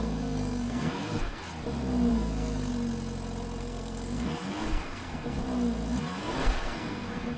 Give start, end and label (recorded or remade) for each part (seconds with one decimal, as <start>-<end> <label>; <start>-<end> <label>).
0.0-1.4 remade; 1.4-2.1 recorded; 2.1-2.7 remade; 2.7-3.6 recorded; 3.6-5.4 remade; 5.4-6.0 recorded; 6.0-7.4 remade